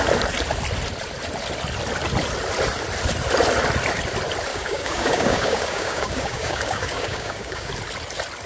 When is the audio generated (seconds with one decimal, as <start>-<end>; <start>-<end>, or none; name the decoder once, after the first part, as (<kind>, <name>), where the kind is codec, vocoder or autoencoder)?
4.5-7.7 (codec, DAC)